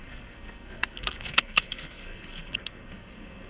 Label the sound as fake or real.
fake